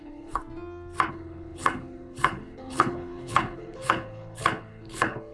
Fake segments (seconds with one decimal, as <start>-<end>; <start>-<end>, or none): 0.0-0.4; 1.1-5.3